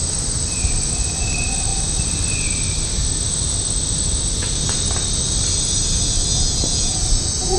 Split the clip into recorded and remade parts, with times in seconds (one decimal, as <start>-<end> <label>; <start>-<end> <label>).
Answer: 0.0-7.6 recorded